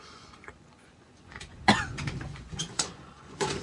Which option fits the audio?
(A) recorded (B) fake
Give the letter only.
B